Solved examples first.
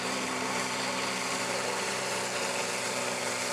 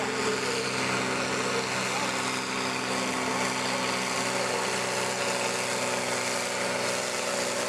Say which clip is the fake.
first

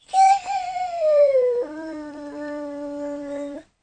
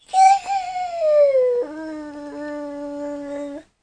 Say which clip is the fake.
first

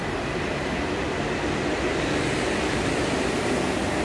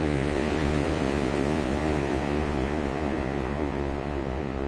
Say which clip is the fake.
second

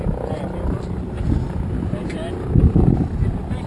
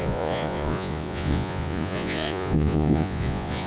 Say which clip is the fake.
second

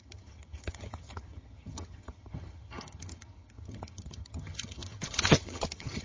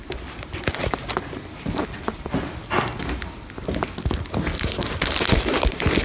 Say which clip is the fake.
first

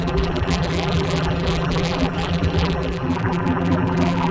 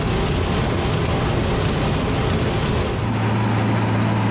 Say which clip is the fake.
first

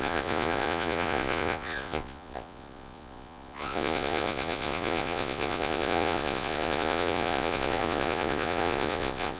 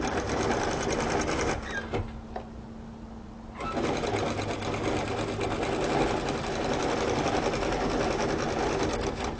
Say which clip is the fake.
first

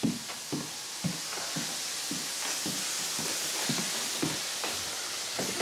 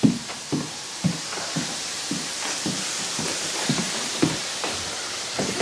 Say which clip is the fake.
second